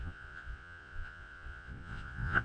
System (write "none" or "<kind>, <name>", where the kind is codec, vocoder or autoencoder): vocoder, Vocos